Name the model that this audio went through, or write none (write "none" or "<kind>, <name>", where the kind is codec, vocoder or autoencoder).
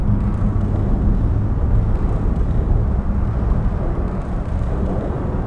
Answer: none